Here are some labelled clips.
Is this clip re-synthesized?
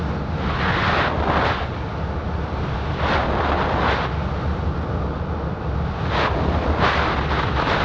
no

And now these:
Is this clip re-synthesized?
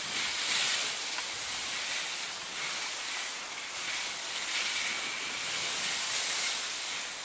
no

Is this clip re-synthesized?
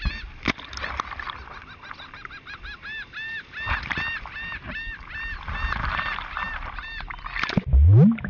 no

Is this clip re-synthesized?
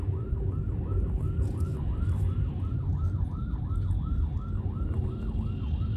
no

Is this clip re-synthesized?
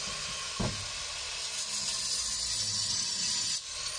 no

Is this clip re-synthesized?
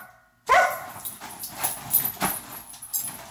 no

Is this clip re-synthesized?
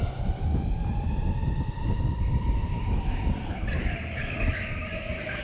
no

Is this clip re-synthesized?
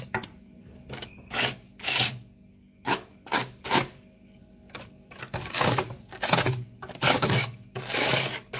yes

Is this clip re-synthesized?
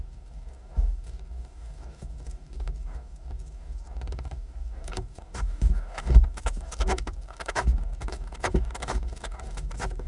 yes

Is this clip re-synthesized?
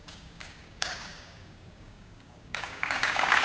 yes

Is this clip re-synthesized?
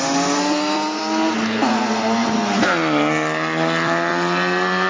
no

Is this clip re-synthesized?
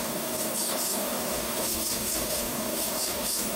yes